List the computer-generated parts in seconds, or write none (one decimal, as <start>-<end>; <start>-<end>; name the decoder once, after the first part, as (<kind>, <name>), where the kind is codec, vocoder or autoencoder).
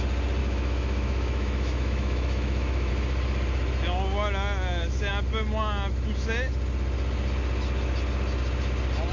0.4-2.9 (autoencoder, DAC-VAE)